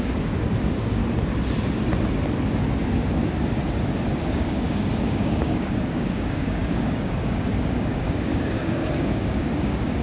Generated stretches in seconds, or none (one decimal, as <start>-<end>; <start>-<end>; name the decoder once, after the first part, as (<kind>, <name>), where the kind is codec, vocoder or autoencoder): 0.0-1.0 (codec, DAC); 4.2-10.0